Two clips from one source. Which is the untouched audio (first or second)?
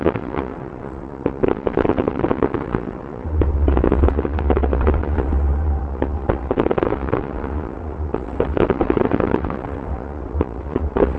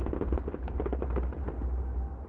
second